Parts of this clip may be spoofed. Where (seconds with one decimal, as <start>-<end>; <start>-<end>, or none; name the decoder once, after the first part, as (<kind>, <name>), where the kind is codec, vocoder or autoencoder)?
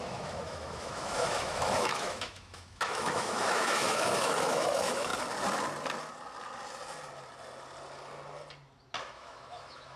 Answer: 0.0-5.1 (autoencoder, DAC-VAE); 9.0-10.0